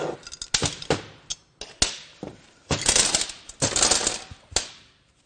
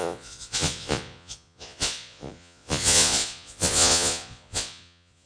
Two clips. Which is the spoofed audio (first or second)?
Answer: second